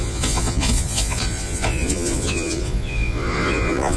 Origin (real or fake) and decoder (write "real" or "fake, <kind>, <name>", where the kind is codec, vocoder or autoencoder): fake, vocoder, Vocos